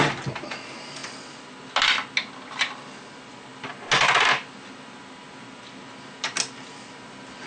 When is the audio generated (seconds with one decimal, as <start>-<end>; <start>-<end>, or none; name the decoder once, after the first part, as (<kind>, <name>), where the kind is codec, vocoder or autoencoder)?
none